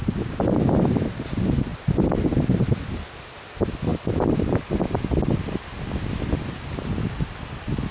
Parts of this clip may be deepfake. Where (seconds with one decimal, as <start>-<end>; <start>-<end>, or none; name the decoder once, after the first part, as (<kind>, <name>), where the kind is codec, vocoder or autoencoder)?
none